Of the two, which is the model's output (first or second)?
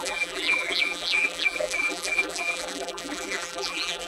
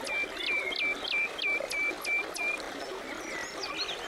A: first